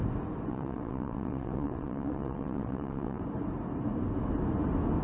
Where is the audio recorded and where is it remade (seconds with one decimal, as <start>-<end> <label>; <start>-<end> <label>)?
0.0-0.5 recorded; 0.5-3.2 remade; 3.2-5.0 recorded